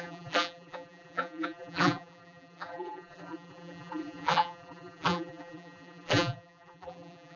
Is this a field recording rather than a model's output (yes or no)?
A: no